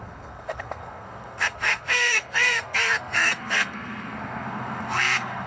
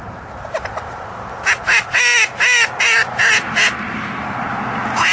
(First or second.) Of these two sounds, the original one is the second